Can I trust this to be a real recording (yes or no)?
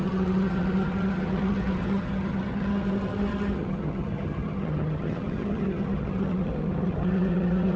no